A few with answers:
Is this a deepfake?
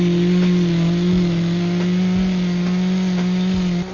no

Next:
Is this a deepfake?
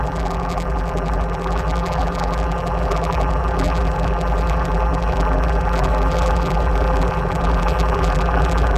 yes